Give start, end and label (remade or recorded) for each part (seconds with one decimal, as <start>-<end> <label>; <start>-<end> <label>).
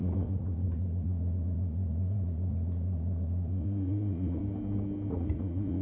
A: 0.0-4.4 remade; 4.4-5.1 recorded; 5.1-5.8 remade